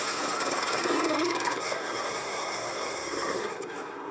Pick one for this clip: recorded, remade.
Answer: remade